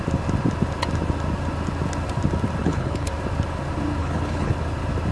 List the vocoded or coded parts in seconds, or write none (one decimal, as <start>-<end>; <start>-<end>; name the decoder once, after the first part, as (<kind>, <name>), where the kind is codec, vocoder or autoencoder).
2.6-3.1 (codec, HILCodec); 4.0-4.5